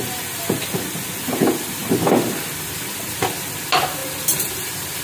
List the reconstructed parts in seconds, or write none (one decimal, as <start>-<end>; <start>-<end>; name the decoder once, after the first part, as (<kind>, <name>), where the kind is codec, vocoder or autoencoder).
4.0-5.0 (vocoder, BigVGAN v2)